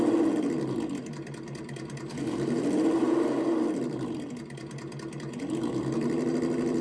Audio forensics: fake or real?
real